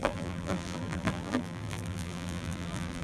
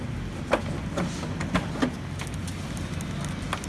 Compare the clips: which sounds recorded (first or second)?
second